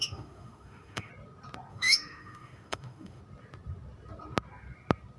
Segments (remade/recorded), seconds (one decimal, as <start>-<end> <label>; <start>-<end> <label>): 0.0-1.1 remade; 1.1-1.7 recorded; 1.7-3.2 remade; 3.2-5.2 recorded